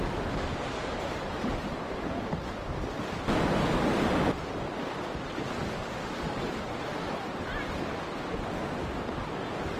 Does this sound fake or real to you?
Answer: real